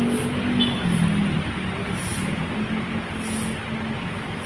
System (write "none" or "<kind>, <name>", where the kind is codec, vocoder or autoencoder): none